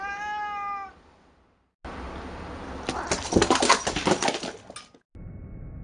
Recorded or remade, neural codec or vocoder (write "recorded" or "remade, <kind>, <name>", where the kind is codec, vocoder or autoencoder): recorded